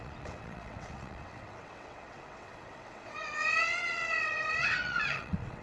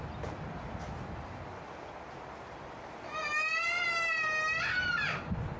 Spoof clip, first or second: first